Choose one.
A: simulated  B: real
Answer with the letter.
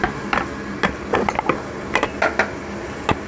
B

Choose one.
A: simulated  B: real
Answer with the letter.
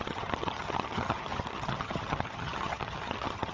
A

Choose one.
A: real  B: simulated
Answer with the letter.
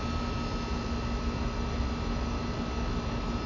A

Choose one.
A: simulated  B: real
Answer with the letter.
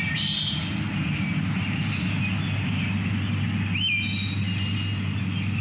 B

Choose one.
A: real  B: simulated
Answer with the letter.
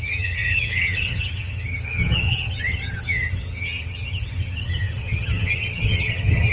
B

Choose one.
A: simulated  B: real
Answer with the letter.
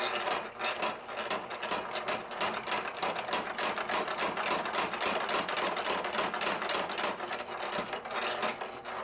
B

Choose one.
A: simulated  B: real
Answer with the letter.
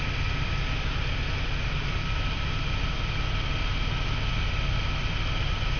B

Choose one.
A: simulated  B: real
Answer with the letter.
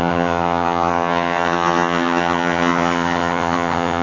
A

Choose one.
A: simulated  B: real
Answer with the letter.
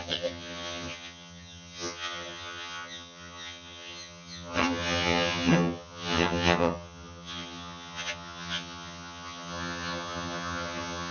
A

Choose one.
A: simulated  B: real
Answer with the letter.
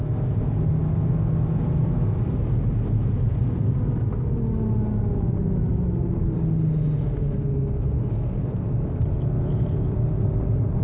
B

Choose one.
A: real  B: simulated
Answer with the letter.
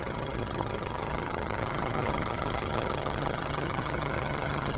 B